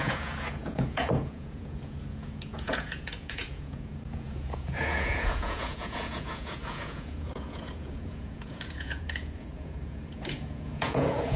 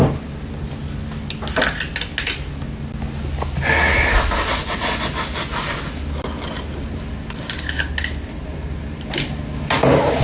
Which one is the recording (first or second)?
second